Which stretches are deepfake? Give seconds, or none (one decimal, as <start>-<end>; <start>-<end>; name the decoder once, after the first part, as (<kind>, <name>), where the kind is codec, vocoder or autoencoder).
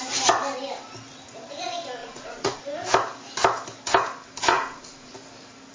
2.0-2.6 (vocoder, Vocos); 4.5-5.1